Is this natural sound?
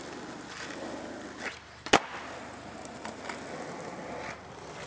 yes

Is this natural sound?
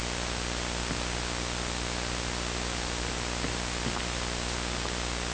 yes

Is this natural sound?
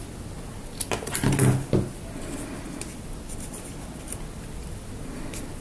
yes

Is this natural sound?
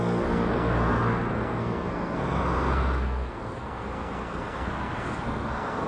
no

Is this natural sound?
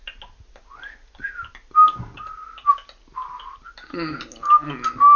yes